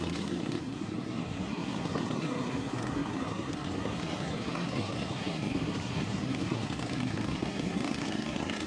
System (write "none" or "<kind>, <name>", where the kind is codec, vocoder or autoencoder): codec, SNAC